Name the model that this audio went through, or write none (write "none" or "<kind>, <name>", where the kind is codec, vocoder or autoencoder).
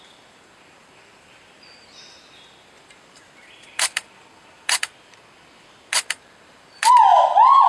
vocoder, BigVGAN v2